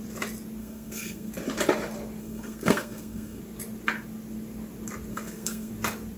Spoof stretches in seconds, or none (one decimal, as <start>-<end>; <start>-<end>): 0.6-1.3; 2.2-3.4; 5.1-5.7